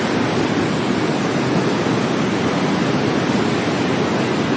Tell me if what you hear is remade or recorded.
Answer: recorded